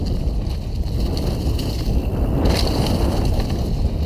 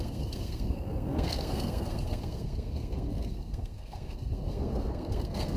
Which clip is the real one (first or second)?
first